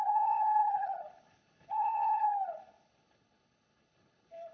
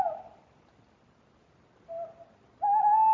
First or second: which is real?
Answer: second